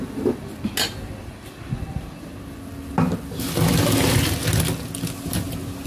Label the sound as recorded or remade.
recorded